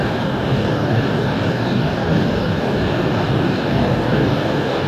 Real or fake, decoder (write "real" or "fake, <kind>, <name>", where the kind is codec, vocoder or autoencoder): fake, codec, DAC